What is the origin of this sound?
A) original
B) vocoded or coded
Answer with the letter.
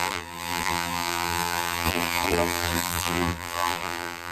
B